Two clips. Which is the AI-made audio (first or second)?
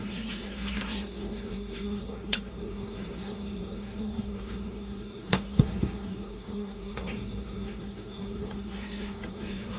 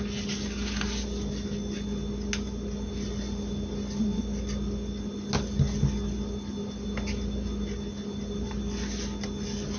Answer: first